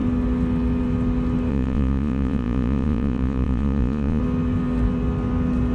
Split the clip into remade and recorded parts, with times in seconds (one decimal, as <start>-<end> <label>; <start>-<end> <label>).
0.0-1.5 recorded; 1.5-4.2 remade; 4.2-5.7 recorded

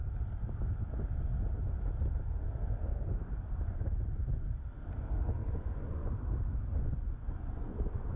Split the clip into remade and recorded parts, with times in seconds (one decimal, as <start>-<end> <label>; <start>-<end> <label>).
0.0-5.4 recorded; 5.4-6.1 remade; 6.1-6.7 recorded; 6.7-8.2 remade

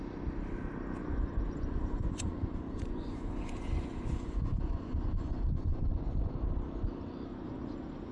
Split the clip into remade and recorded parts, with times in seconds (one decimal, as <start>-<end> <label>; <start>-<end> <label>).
0.0-1.0 recorded; 1.0-5.9 remade; 5.9-7.3 recorded; 7.3-8.1 remade

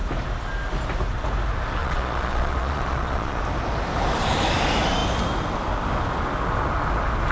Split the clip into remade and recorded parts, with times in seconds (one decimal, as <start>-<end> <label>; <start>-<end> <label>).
0.0-1.8 recorded; 1.8-3.4 remade; 3.4-7.3 recorded

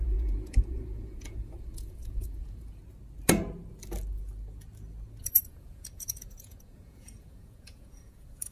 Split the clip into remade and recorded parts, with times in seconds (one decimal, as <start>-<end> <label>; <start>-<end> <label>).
0.0-2.8 remade; 2.8-5.2 recorded; 5.2-8.5 remade

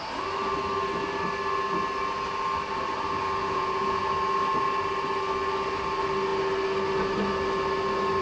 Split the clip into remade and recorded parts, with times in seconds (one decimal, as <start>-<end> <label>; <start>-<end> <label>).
0.0-3.4 recorded; 3.4-4.0 remade; 4.0-8.2 recorded